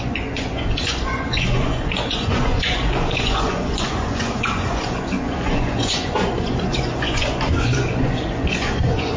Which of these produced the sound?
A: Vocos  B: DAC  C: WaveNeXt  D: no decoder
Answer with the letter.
A